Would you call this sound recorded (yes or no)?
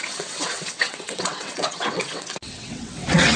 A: no